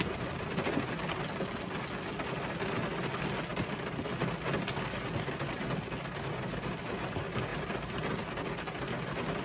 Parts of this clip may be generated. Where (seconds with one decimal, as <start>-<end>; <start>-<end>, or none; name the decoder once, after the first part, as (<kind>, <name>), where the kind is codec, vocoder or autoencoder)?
none